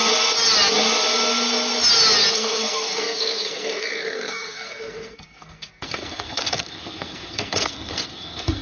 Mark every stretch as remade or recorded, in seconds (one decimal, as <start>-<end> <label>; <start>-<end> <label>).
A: 0.0-2.3 recorded; 2.3-8.6 remade